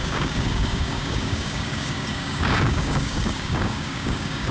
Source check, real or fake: fake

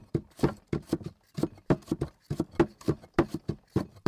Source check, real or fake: real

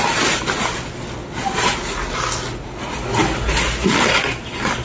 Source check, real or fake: real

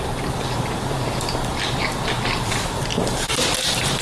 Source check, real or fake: fake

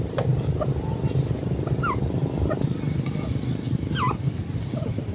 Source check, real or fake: real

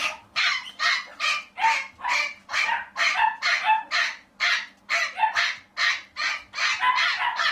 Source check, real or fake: real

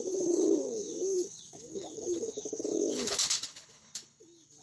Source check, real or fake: fake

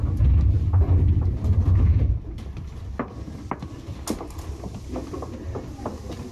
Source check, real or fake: real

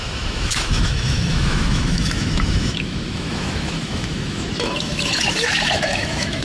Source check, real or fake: fake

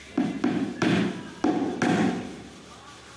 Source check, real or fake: real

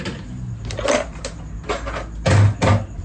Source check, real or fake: real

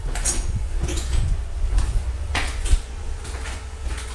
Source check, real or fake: fake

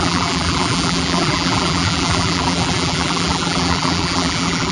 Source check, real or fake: fake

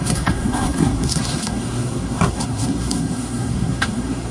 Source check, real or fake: fake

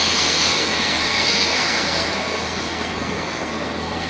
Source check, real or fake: fake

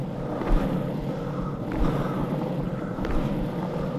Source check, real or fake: real